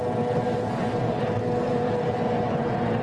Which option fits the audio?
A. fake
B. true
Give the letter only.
B